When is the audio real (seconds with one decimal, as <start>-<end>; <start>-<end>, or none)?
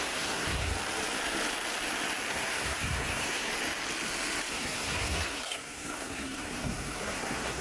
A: 0.7-2.3; 3.5-4.5